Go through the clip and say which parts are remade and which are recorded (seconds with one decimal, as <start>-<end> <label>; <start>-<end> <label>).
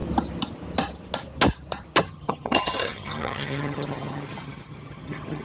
0.0-2.0 recorded; 2.0-5.4 remade